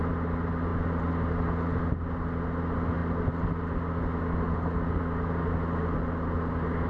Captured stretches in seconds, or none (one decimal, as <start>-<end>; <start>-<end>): 0.0-6.9